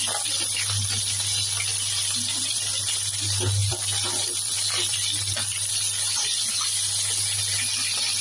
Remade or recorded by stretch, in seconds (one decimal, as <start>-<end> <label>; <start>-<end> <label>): 0.0-3.6 recorded; 3.6-5.7 remade; 5.7-8.2 recorded